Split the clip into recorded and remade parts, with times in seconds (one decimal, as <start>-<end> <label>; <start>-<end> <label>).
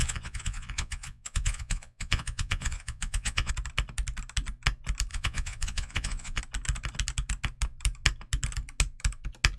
0.0-3.5 remade; 3.5-5.1 recorded; 5.1-6.4 remade; 6.4-9.6 recorded